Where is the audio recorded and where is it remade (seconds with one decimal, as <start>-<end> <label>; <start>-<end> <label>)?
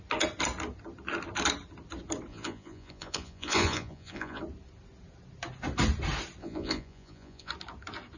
0.0-2.3 recorded; 2.3-4.4 remade; 4.4-6.4 recorded; 6.4-7.5 remade; 7.5-8.2 recorded